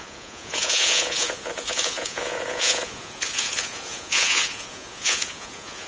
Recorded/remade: remade